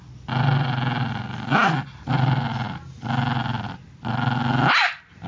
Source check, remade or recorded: recorded